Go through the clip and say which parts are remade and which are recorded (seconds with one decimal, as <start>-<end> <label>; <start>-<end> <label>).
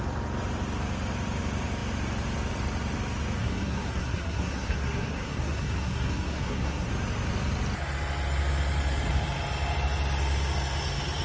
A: 0.0-3.4 recorded; 3.4-6.9 remade; 6.9-11.2 recorded